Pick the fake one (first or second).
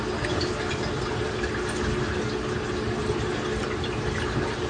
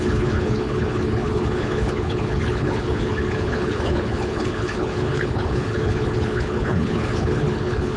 second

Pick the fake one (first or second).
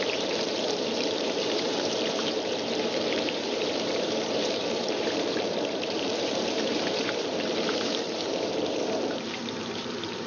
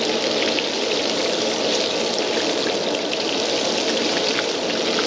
first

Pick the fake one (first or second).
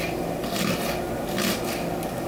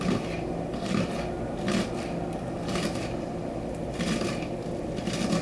second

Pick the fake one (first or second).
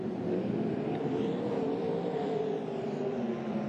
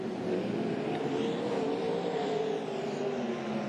first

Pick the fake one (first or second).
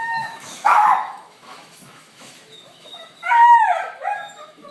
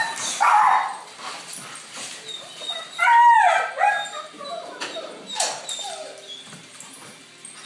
first